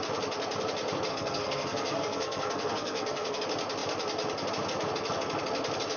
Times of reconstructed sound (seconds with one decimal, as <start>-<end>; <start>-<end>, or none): 1.1-3.4